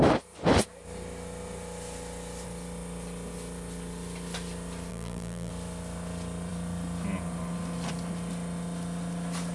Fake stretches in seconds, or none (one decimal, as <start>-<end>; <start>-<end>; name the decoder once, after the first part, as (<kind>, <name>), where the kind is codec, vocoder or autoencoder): 4.9-5.5 (vocoder, BigVGAN v2)